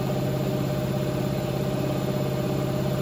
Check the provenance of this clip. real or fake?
real